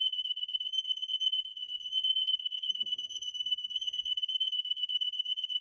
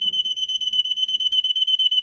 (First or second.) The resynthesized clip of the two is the first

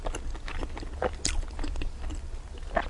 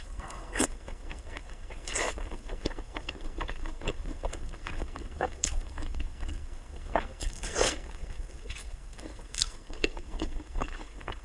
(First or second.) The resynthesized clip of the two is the second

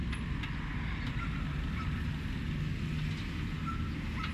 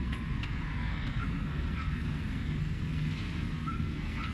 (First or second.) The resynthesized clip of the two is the second